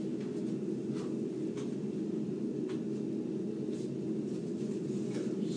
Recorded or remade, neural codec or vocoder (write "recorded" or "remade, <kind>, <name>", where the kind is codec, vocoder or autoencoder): recorded